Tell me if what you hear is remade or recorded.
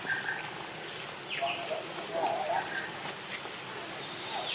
recorded